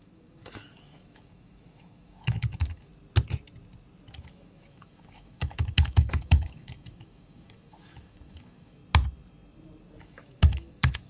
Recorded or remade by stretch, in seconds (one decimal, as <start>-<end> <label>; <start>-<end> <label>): 0.0-2.9 remade; 2.9-4.2 recorded; 4.2-8.8 remade; 8.8-10.0 recorded; 10.0-11.1 remade